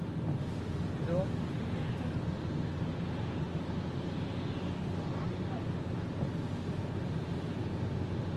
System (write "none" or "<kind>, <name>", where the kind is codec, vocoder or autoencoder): none